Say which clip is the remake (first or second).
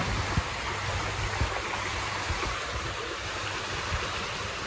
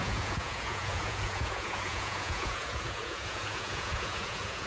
second